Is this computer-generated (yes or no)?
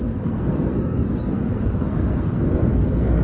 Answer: yes